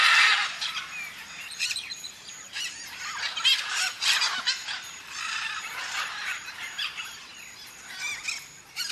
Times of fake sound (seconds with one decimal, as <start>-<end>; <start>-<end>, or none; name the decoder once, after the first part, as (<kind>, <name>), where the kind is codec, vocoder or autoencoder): 0.0-2.7 (vocoder, BigVGAN v2); 3.5-7.4